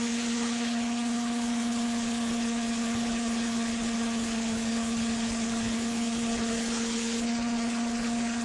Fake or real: fake